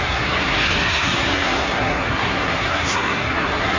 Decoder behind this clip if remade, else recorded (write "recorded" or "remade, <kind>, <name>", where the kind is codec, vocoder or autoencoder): remade, codec, SNAC